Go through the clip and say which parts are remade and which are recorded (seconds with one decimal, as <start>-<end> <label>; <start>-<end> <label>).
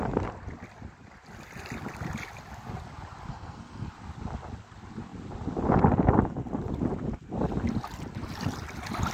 0.0-3.3 recorded; 3.3-3.9 remade; 3.9-9.1 recorded